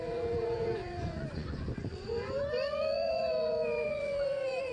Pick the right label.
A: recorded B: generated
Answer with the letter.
B